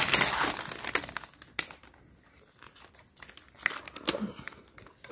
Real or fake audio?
real